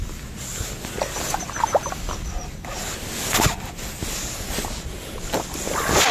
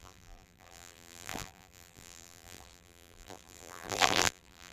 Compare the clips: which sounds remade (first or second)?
second